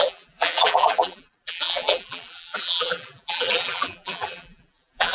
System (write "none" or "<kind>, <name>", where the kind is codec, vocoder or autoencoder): vocoder, BigVGAN v2